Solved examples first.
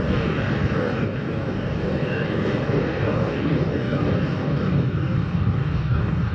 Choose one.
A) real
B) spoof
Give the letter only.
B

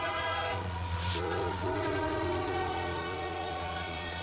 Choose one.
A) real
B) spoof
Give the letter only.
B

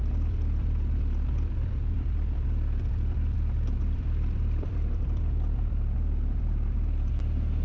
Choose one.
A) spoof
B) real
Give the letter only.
A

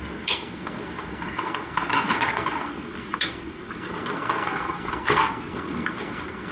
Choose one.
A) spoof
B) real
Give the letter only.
A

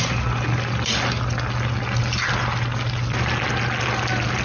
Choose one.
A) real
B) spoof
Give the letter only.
A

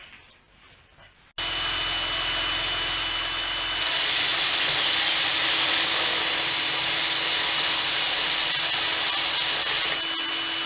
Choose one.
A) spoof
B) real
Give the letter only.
B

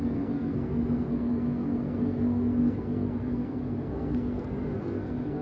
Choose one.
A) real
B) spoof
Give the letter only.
B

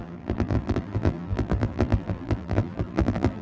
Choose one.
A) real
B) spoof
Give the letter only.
B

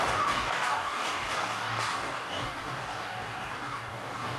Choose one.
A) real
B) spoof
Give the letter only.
B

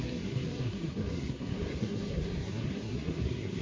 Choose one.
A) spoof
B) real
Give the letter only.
A